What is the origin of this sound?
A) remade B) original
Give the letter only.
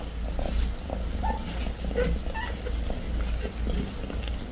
B